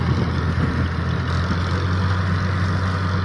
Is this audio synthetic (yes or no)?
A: no